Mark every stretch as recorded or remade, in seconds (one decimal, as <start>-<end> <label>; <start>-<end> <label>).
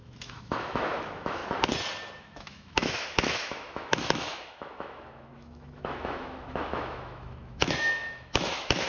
0.0-1.4 remade; 1.4-2.2 recorded; 2.2-8.9 remade